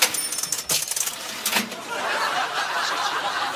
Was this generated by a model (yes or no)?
no